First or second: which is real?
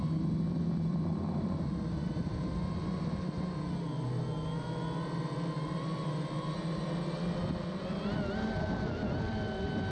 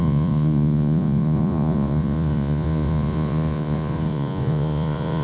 first